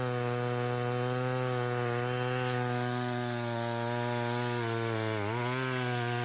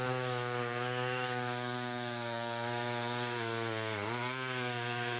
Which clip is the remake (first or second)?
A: second